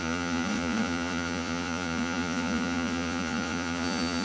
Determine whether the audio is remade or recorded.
remade